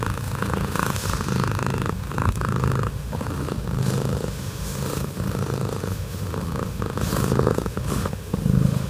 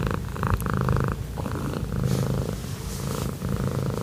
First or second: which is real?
second